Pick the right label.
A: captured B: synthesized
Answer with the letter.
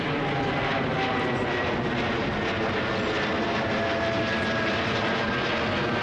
A